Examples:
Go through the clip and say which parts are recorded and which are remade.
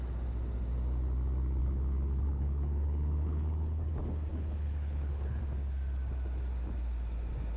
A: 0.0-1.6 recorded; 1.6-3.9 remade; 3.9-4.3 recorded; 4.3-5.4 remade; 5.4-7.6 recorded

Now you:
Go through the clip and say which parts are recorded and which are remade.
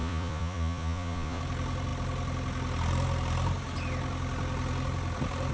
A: 0.0-1.4 remade; 1.4-5.5 recorded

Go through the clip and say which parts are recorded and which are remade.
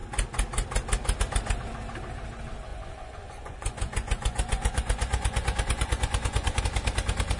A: 0.0-2.7 recorded; 2.7-6.6 remade; 6.6-7.4 recorded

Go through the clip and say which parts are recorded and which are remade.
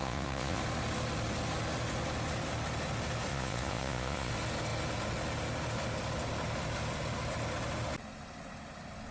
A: 0.0-0.6 remade; 0.6-3.3 recorded; 3.3-4.3 remade; 4.3-9.1 recorded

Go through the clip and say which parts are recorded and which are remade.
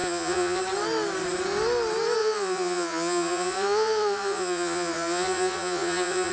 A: 0.0-0.6 remade; 0.6-2.2 recorded; 2.2-6.3 remade